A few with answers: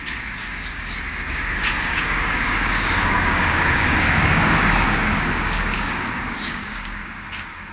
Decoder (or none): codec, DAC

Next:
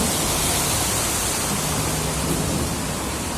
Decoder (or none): none